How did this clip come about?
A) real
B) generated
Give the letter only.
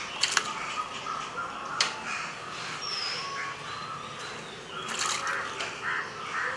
A